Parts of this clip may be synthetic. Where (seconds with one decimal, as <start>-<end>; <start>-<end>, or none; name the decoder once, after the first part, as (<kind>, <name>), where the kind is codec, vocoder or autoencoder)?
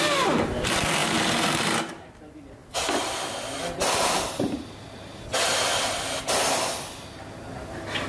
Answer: 1.0-1.6 (vocoder, BigVGAN v2)